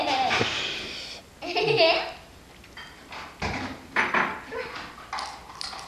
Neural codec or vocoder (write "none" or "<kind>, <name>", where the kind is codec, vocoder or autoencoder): none